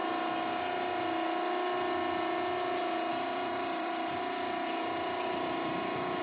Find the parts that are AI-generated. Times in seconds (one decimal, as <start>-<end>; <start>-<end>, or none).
3.1-6.2